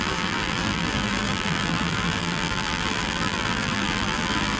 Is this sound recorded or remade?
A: remade